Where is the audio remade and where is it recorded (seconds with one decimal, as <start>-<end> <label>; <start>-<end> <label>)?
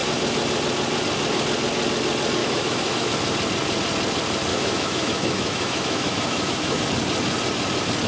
0.0-2.4 recorded; 2.4-3.1 remade; 3.1-4.5 recorded; 4.5-6.8 remade; 6.8-8.1 recorded